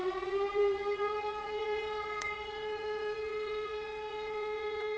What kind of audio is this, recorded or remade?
remade